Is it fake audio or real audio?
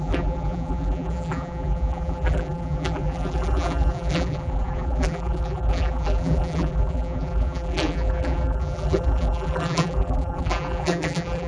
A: fake